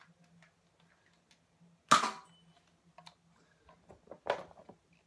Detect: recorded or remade recorded